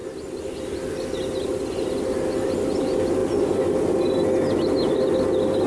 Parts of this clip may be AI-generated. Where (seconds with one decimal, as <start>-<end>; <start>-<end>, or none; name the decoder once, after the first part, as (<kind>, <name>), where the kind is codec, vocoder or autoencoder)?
none